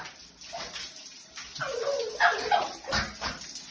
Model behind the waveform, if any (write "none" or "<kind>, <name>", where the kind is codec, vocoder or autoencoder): none